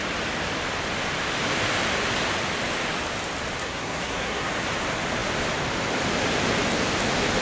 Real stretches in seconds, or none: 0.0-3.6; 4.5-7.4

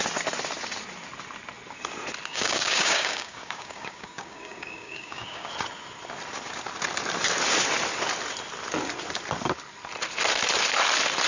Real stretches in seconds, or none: 0.0-2.3; 5.5-11.3

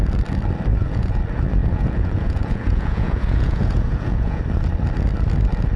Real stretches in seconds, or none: 0.0-0.7; 1.2-1.6; 4.4-5.8

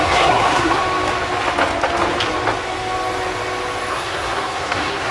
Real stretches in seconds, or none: 0.8-3.9

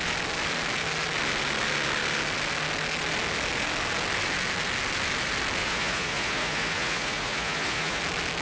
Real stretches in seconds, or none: 0.0-5.6; 8.0-8.4